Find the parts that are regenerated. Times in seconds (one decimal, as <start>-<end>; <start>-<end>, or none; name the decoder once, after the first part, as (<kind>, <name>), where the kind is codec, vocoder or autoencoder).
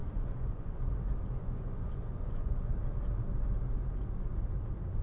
0.0-0.9 (vocoder, Vocos); 1.4-2.7